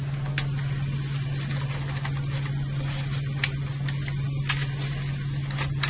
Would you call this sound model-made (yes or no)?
no